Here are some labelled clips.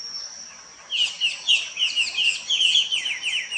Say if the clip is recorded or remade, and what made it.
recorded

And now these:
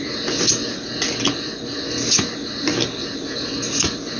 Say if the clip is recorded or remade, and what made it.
recorded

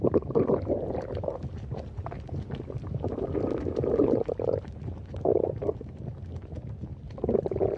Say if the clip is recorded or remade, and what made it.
remade, vocoder, BigVGAN v2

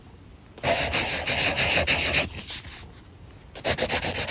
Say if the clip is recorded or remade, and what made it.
recorded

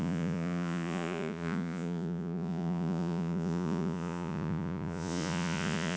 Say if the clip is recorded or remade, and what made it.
remade, vocoder, Vocos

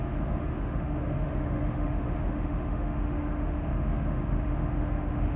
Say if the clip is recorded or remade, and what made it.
remade, autoencoder, DAC-VAE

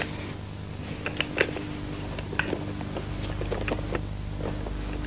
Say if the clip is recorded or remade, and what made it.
recorded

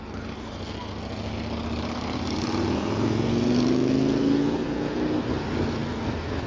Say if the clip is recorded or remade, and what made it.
recorded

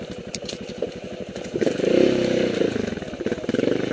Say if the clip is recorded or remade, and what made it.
remade, vocoder, BigVGAN v2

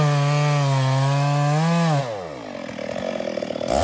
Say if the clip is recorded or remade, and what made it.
recorded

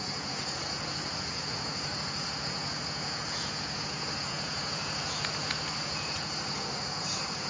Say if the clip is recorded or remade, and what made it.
remade, vocoder, Vocos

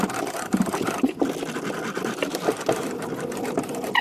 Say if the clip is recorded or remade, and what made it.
recorded